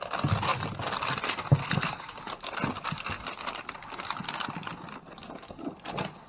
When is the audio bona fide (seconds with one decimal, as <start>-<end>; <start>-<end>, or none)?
0.0-1.6; 2.1-6.3